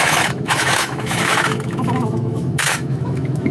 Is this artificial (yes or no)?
yes